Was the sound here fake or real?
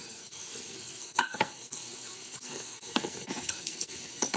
fake